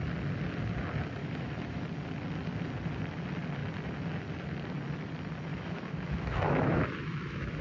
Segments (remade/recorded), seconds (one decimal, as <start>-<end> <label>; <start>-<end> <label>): 0.0-1.2 recorded; 1.2-1.8 remade; 1.8-5.5 recorded; 5.5-7.6 remade